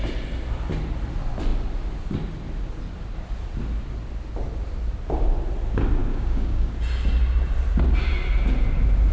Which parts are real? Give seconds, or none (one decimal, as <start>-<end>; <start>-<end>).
0.0-6.0; 6.7-9.1